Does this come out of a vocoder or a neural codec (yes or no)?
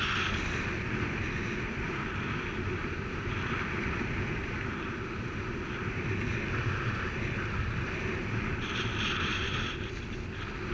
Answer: no